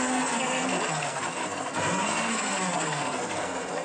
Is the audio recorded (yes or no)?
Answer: no